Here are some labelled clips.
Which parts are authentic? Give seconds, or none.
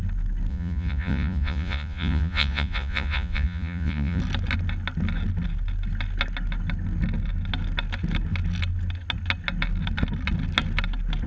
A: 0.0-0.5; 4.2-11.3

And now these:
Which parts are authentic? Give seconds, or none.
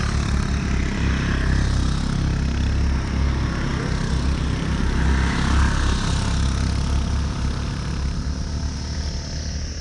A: 0.0-9.8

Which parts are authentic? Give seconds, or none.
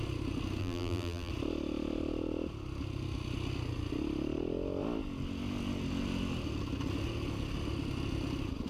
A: 0.0-0.6; 1.3-8.7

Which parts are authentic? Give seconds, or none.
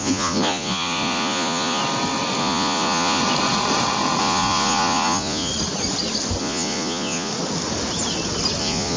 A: 1.8-2.4; 3.2-4.2; 5.5-6.4; 7.3-8.6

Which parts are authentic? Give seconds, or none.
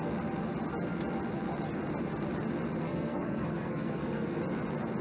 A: 0.0-2.8; 4.4-5.0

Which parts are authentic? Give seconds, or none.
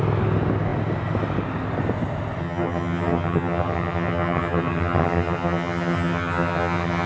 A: 0.0-2.4